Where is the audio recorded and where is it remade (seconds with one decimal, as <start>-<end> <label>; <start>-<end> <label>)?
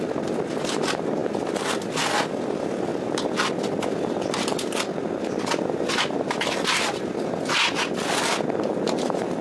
0.0-9.4 recorded